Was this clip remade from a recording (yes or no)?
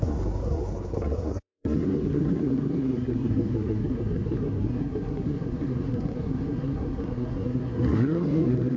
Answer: yes